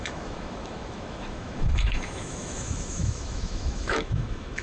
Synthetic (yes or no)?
yes